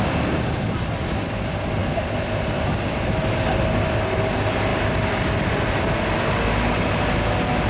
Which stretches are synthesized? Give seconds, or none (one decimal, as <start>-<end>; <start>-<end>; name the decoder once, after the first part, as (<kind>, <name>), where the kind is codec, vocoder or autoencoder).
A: 4.7-6.0 (vocoder, BigVGAN v2)